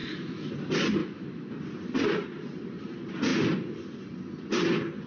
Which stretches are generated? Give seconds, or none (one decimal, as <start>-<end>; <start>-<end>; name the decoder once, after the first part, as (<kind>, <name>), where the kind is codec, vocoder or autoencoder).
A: 0.0-0.5 (autoencoder, DAC-VAE); 1.0-1.5